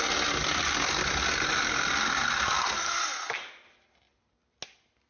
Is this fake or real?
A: real